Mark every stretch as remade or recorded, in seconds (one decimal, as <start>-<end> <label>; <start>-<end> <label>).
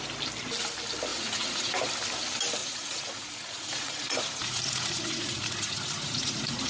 0.0-1.1 recorded; 1.1-1.7 remade; 1.7-2.6 recorded; 2.6-6.7 remade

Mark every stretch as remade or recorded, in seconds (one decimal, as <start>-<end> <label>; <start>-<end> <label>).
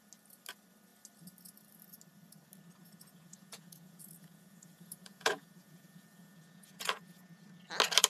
0.0-2.8 recorded; 2.8-7.4 remade; 7.4-8.1 recorded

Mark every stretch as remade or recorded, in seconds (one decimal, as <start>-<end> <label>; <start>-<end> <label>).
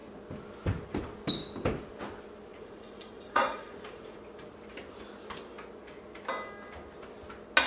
0.0-2.5 recorded; 2.5-4.2 remade; 4.2-7.7 recorded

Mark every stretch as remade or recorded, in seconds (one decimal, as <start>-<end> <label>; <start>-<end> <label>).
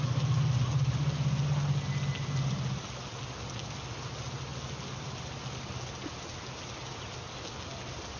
0.0-8.2 recorded